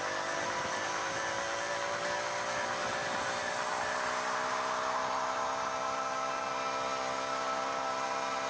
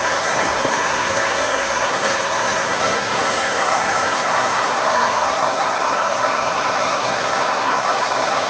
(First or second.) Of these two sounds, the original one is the first